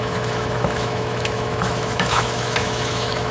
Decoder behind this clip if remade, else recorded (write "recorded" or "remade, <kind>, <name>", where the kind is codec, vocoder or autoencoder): remade, autoencoder, DAC-VAE